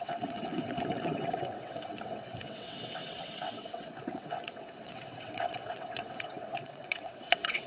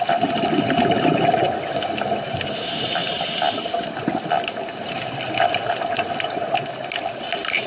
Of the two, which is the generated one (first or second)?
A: first